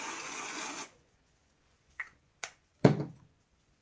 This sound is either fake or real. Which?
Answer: fake